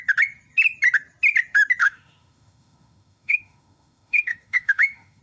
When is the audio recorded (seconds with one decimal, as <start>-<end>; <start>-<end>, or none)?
0.0-1.8